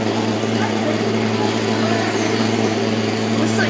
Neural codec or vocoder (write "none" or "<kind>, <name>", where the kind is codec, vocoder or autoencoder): none